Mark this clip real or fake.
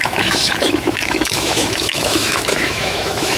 fake